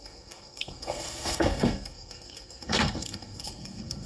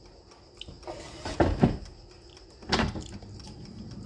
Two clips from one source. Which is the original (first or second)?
second